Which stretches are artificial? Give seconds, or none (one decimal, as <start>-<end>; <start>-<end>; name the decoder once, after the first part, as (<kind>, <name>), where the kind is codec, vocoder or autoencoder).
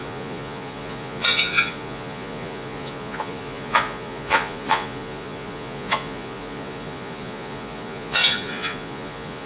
0.0-9.5 (vocoder, Vocos)